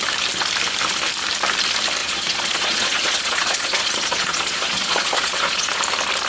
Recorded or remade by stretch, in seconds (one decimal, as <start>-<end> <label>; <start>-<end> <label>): 0.0-2.0 recorded; 2.0-5.8 remade; 5.8-6.3 recorded